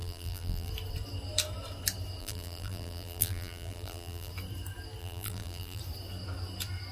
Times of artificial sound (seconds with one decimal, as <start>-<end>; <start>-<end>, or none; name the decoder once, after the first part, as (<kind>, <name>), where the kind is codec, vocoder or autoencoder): 0.0-0.7 (vocoder, BigVGAN v2); 2.2-4.3; 5.0-5.8